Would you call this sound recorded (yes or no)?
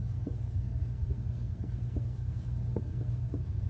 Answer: no